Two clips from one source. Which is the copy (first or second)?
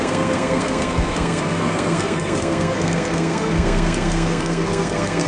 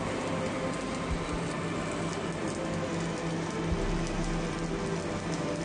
first